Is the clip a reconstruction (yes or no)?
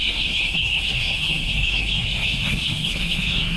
yes